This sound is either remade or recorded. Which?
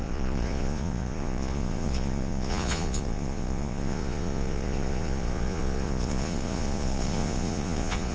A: remade